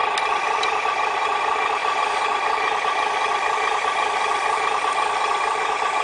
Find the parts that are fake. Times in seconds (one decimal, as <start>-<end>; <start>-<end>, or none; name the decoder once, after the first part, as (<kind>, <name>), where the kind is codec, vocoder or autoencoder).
0.0-1.4 (vocoder, BigVGAN v2)